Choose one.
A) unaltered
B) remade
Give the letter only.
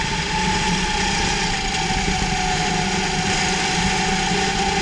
A